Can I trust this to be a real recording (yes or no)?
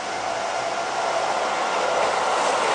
yes